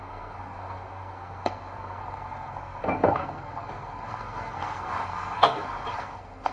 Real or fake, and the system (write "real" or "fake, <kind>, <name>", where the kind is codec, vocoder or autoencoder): fake, codec, SNAC